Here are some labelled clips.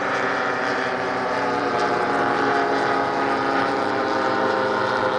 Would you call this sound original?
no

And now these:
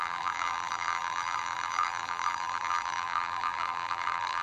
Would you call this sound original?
no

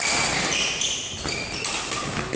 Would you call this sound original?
yes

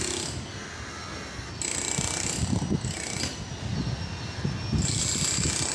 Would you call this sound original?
yes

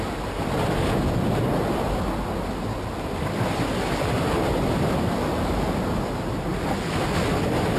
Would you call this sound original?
yes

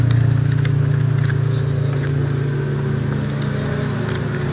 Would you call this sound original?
yes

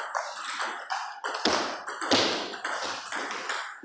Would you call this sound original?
yes